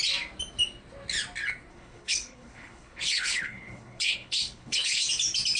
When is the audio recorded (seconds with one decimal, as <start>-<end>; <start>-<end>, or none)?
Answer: 0.0-1.7; 5.1-5.6